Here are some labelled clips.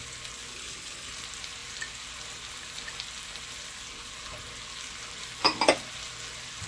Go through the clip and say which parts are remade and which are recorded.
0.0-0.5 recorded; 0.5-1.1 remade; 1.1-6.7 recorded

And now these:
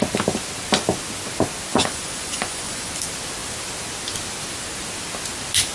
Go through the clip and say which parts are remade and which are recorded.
0.0-1.7 recorded; 1.7-2.9 remade; 2.9-5.7 recorded

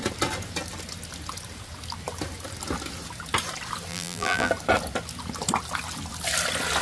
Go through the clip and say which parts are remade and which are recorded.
0.0-3.9 recorded; 3.9-4.5 remade; 4.5-6.8 recorded

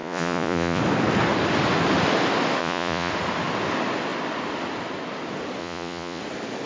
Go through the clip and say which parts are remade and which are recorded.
0.0-0.8 remade; 0.8-2.6 recorded; 2.6-3.1 remade; 3.1-5.6 recorded; 5.6-6.2 remade; 6.2-6.7 recorded